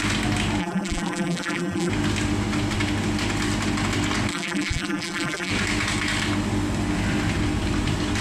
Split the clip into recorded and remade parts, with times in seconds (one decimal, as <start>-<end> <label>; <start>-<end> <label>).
0.0-0.6 recorded; 0.6-1.9 remade; 1.9-4.3 recorded; 4.3-5.5 remade; 5.5-8.2 recorded